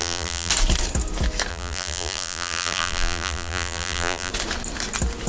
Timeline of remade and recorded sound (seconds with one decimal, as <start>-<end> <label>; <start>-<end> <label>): 0.0-0.5 remade; 0.5-1.5 recorded; 1.5-4.3 remade; 4.3-5.3 recorded